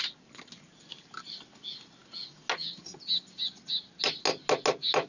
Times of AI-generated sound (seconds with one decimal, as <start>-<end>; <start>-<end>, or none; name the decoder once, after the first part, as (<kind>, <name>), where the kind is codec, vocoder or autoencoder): none